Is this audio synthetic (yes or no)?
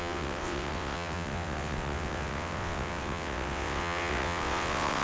yes